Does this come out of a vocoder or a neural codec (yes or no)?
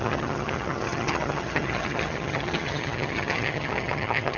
yes